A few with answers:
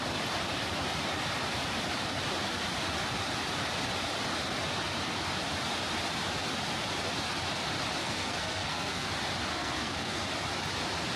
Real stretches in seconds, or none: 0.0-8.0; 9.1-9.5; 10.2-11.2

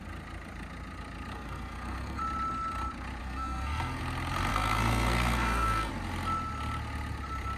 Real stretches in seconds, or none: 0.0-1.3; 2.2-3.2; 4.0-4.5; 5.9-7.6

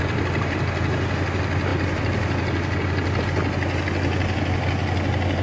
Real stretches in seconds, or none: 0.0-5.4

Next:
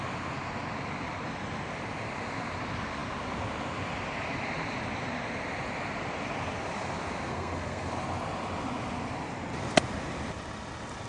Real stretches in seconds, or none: 0.0-7.3; 7.9-11.1

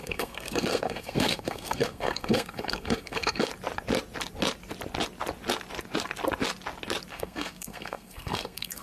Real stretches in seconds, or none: 3.5-7.1

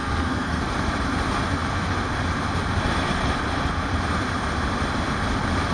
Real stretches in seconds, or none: 0.6-5.7